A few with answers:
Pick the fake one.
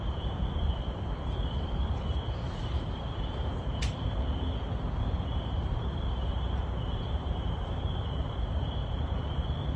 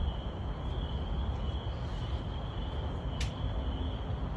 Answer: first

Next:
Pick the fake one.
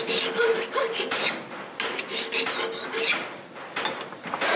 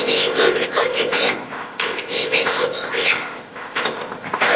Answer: second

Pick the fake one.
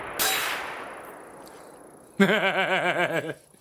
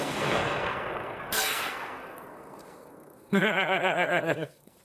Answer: second